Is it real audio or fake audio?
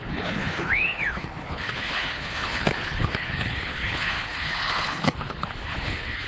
fake